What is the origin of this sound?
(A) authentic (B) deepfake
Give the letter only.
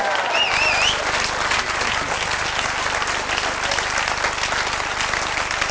A